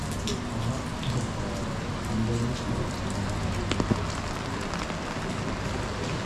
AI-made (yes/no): no